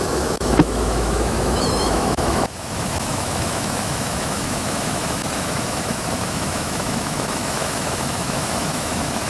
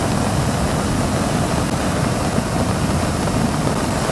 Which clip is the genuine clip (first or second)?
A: second